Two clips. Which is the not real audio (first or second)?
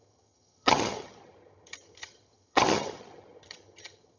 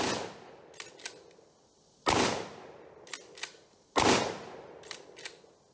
first